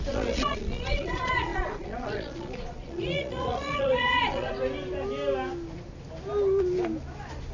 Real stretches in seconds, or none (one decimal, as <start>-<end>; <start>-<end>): 4.5-7.5